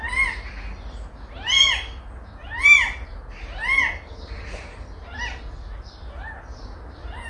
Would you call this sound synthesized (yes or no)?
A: no